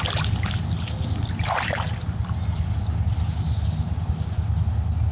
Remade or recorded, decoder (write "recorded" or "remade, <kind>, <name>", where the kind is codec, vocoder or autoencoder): recorded